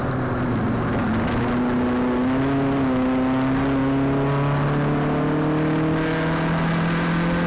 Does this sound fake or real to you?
real